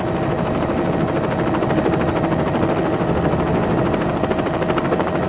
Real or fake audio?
real